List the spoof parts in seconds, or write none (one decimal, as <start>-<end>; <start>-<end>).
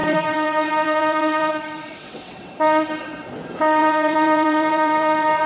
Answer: 0.0-3.3; 3.8-5.5